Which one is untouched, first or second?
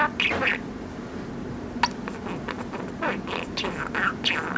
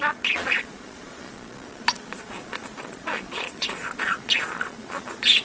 first